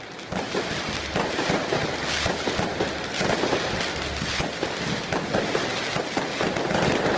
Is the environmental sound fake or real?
real